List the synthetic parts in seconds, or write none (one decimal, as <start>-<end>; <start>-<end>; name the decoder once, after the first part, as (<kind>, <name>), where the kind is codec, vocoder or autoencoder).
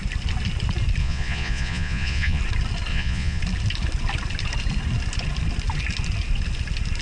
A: 1.0-2.4 (vocoder, Vocos); 2.9-3.4